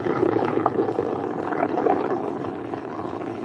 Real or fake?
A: fake